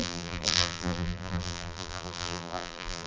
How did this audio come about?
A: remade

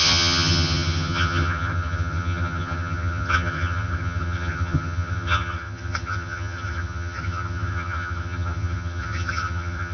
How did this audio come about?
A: remade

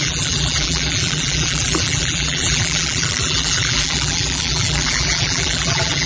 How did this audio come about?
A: remade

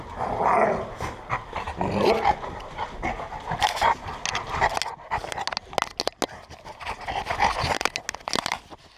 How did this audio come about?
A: recorded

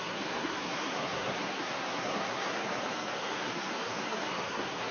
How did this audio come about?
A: remade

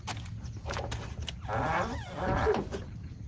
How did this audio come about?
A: recorded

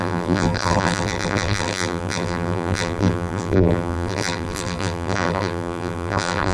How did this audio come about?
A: remade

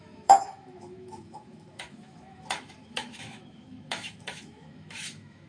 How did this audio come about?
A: remade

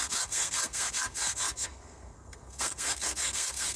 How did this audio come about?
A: remade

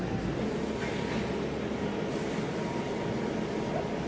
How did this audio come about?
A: recorded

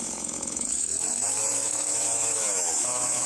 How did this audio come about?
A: remade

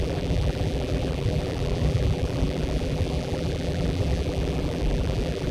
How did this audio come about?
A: remade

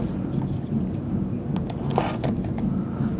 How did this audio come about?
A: recorded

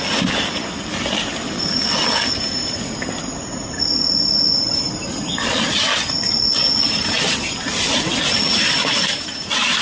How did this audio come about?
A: recorded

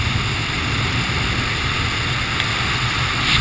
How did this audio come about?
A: recorded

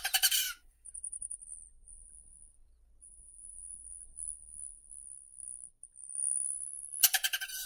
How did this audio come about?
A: recorded